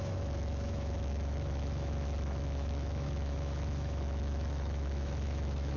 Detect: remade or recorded remade